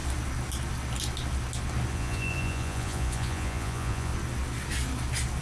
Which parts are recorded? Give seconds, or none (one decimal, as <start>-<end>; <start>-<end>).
0.0-1.9; 4.1-5.4